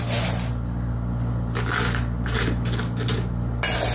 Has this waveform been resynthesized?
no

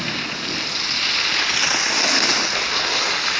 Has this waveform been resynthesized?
no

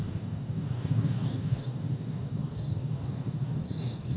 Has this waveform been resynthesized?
yes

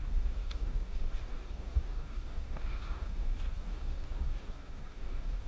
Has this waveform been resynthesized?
yes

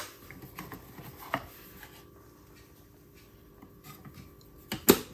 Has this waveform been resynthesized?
no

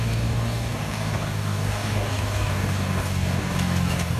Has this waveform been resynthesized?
yes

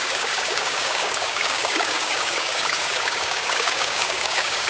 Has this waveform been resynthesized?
yes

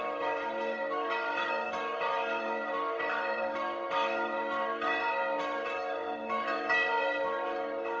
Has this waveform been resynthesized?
yes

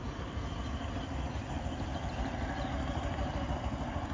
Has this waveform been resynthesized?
no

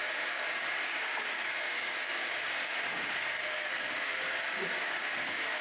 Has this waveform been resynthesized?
yes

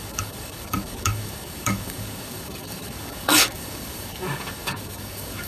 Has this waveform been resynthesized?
yes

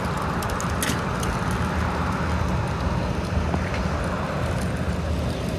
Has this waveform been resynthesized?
no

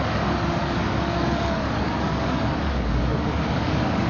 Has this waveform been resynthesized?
yes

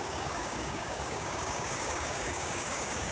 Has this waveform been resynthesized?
yes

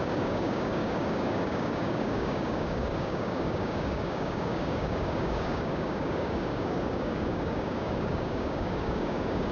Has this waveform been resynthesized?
yes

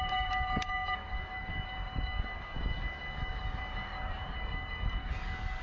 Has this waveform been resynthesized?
yes